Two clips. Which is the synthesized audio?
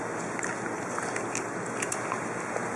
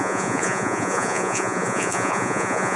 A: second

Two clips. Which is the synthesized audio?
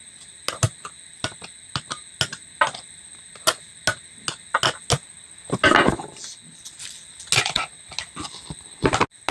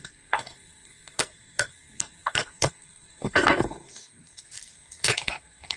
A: second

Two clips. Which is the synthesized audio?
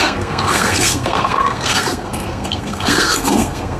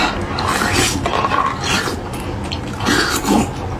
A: first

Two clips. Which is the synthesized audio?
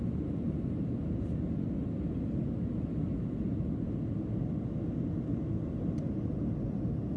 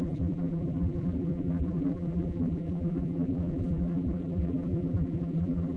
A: second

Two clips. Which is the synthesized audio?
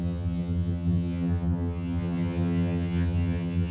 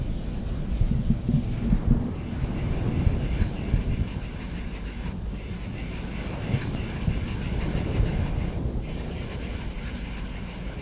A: first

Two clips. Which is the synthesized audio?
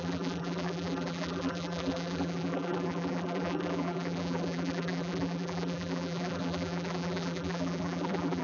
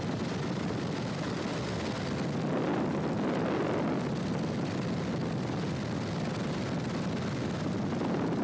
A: first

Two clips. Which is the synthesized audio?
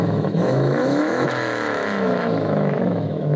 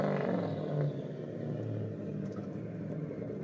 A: first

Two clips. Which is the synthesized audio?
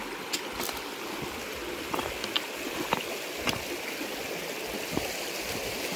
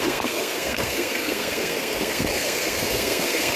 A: second